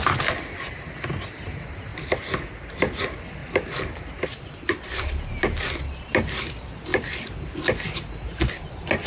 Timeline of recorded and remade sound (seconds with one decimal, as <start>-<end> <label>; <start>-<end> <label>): 0.0-1.9 recorded; 1.9-3.0 remade; 3.0-3.4 recorded; 3.4-6.3 remade; 6.3-9.1 recorded